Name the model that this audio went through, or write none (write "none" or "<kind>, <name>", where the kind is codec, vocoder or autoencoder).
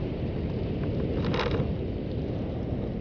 none